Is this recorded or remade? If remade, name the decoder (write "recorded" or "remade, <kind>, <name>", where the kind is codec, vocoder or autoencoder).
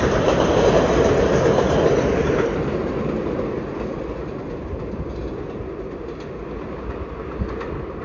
recorded